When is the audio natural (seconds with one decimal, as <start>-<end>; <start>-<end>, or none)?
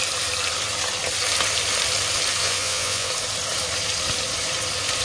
0.0-2.4; 3.1-5.0